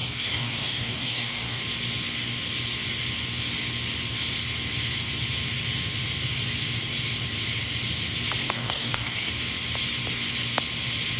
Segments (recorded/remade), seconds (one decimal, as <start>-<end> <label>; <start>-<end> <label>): 0.0-1.6 remade; 1.6-8.4 recorded; 8.4-9.3 remade; 9.3-11.2 recorded